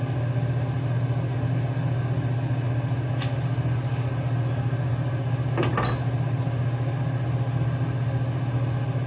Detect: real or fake real